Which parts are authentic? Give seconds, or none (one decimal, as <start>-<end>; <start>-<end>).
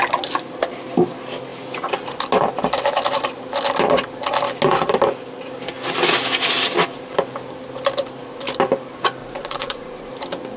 0.0-9.2; 10.1-10.6